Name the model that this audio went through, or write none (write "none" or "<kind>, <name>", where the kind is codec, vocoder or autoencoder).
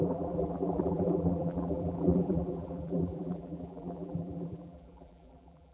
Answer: vocoder, BigVGAN v2